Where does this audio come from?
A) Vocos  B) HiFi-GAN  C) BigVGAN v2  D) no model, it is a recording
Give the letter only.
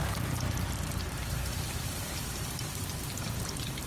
C